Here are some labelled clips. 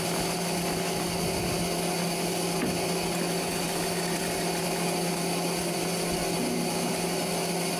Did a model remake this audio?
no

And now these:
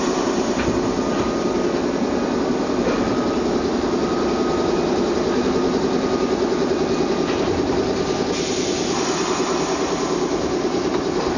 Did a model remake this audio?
no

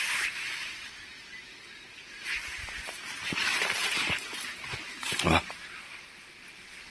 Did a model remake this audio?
no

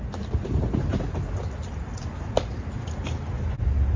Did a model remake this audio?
no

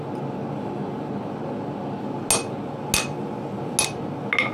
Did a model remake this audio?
no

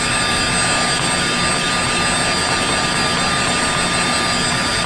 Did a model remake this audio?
no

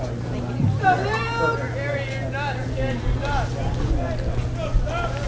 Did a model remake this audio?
no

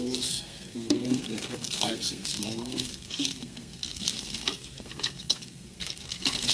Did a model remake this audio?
yes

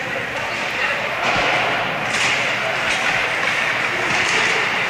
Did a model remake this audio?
no